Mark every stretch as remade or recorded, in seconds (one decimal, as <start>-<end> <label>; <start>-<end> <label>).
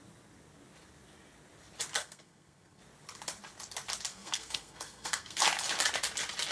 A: 0.0-2.0 recorded; 2.0-2.8 remade; 2.8-4.1 recorded; 4.1-5.4 remade; 5.4-6.5 recorded